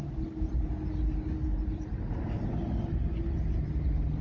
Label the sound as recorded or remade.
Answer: recorded